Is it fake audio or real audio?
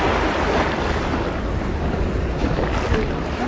real